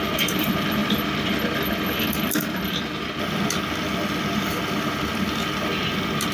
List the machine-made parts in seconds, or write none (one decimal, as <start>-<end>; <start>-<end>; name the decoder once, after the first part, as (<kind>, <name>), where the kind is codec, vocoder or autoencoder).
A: none